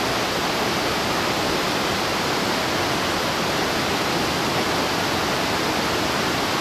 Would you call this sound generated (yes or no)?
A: no